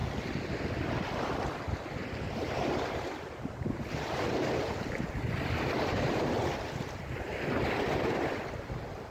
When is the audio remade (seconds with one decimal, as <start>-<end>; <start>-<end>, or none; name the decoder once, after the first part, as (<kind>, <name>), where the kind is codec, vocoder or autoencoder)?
2.0-5.1 (vocoder, BigVGAN v2)